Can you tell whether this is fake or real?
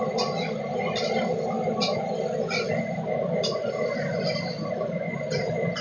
real